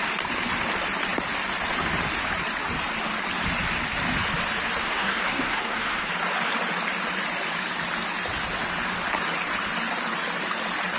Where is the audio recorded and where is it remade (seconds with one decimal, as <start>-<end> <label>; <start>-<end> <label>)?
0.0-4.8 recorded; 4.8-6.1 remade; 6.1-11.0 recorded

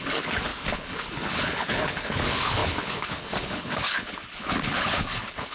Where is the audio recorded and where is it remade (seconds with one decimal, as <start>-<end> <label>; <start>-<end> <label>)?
0.0-5.5 remade

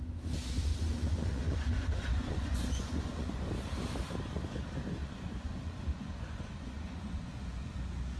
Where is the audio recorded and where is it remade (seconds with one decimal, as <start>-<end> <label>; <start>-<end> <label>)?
0.0-0.7 recorded; 0.7-3.5 remade; 3.5-5.0 recorded; 5.0-7.7 remade; 7.7-8.2 recorded

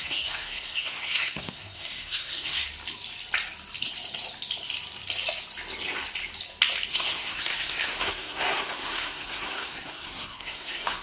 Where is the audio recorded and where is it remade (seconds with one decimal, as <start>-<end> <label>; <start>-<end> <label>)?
0.0-2.7 remade; 2.7-6.9 recorded; 6.9-11.0 remade

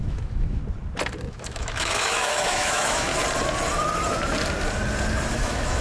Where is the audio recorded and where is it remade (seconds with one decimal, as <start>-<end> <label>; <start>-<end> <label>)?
0.0-0.6 remade; 0.6-1.3 recorded; 1.3-3.1 remade; 3.1-5.3 recorded; 5.3-5.8 remade

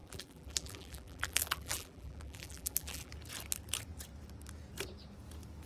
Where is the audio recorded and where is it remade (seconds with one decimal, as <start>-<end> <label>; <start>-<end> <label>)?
0.0-3.1 remade; 3.1-5.7 recorded

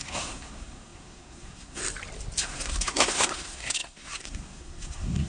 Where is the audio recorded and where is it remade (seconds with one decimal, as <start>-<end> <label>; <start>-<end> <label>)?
0.0-1.8 remade; 1.8-2.4 recorded; 2.4-5.3 remade